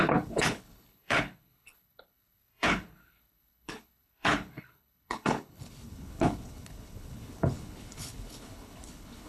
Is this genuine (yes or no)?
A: no